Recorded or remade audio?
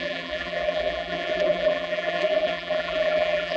remade